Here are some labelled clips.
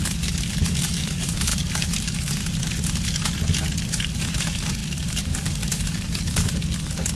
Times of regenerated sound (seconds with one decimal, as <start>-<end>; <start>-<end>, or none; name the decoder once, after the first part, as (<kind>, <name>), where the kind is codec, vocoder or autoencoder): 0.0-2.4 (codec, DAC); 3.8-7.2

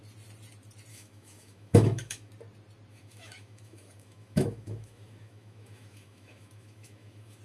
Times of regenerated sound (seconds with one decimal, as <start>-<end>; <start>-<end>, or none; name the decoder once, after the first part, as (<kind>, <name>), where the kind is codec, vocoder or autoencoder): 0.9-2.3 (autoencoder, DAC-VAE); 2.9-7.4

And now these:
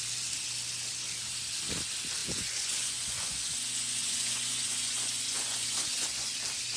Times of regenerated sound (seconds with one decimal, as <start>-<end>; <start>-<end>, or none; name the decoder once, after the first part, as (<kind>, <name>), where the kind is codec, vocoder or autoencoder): 2.2-6.3 (vocoder, Vocos)